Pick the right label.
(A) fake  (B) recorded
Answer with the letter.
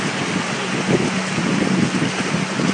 B